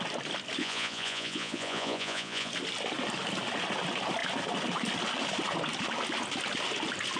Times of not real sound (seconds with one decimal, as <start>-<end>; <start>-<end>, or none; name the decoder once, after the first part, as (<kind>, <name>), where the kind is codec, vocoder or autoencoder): 0.6-2.5 (vocoder, Vocos)